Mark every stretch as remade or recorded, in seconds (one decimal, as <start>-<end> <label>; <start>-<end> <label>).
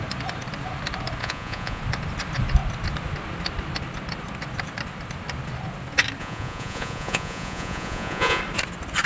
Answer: 0.0-1.2 recorded; 1.2-1.8 remade; 1.8-6.2 recorded; 6.2-8.4 remade; 8.4-9.1 recorded